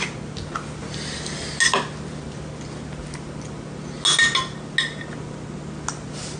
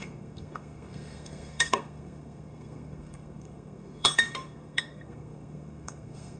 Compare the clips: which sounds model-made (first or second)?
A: second